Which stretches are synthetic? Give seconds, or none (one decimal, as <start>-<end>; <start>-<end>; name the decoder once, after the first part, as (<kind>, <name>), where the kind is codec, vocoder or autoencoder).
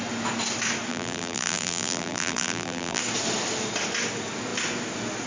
0.9-3.0 (vocoder, BigVGAN v2)